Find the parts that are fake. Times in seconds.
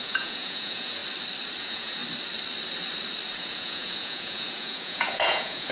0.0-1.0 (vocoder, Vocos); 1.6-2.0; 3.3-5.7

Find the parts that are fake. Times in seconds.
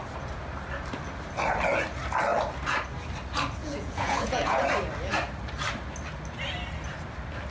3.6-4.6 (vocoder, Vocos)